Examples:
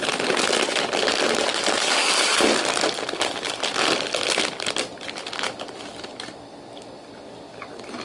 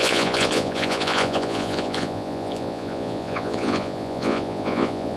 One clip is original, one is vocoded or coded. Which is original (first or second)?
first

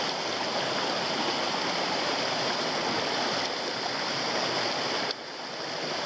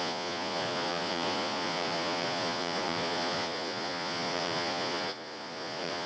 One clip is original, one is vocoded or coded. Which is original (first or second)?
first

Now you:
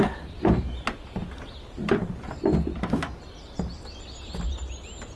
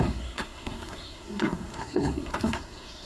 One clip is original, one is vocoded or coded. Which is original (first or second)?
first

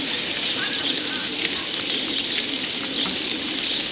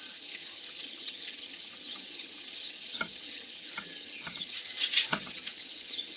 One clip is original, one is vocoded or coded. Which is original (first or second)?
first